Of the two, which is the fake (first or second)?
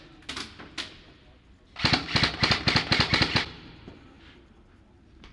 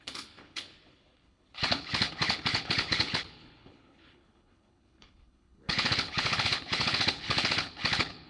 second